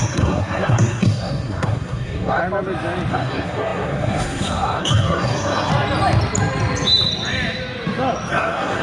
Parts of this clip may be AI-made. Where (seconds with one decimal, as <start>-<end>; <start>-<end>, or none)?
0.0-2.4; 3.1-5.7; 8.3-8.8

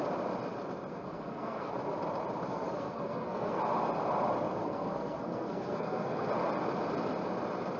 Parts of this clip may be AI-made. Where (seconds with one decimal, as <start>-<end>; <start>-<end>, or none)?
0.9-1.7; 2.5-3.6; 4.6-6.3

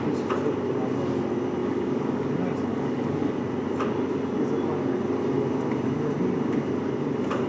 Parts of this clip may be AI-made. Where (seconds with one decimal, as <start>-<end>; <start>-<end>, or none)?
1.6-2.3; 2.7-3.4

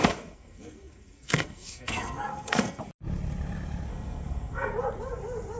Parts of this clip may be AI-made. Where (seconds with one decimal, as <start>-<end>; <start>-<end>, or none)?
0.0-2.8; 3.9-4.7

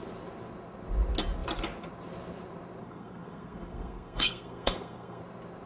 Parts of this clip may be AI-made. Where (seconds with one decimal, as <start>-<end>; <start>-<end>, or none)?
2.8-5.2

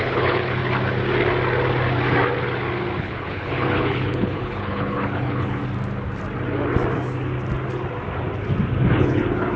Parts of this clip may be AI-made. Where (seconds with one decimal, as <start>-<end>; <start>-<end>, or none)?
0.0-0.6; 3.0-5.6; 8.9-9.6

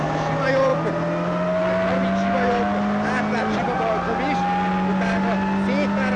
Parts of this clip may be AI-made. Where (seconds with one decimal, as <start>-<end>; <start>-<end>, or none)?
none